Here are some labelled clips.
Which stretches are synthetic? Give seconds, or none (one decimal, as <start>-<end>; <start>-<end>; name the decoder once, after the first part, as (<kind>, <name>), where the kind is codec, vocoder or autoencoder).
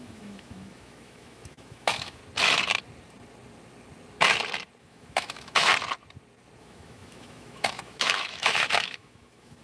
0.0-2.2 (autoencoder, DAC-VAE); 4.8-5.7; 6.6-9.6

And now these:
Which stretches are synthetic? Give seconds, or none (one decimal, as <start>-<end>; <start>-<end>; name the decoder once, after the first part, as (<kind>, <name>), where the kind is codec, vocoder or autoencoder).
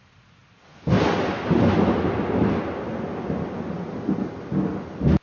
none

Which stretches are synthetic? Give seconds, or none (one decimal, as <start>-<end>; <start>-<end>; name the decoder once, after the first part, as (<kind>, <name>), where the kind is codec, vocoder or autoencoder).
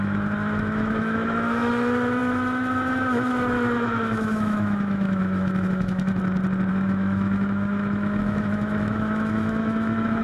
0.0-6.2 (autoencoder, DAC-VAE); 6.7-10.2